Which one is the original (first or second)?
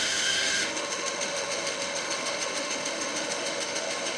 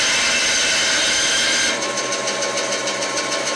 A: second